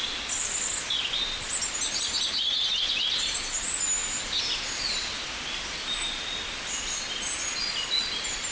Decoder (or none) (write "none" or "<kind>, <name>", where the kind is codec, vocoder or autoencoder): none